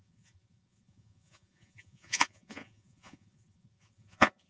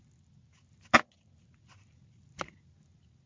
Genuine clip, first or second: second